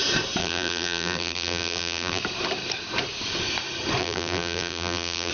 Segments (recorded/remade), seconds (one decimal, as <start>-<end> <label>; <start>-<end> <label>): 0.0-0.4 recorded; 0.4-2.2 remade; 2.2-4.0 recorded; 4.0-5.3 remade